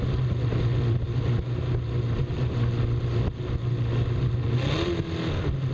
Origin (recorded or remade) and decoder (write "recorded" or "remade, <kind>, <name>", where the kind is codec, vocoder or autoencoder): recorded